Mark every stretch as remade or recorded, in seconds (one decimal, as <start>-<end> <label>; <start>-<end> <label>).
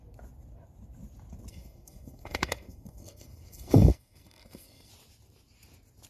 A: 0.0-1.5 recorded; 1.5-4.9 remade; 4.9-6.1 recorded